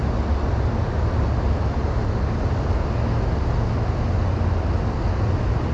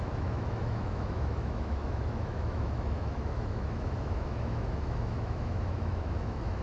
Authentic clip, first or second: first